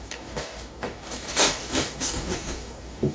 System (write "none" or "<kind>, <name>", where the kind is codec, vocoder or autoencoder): codec, DAC